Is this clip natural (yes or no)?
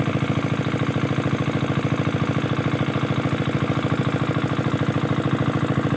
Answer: yes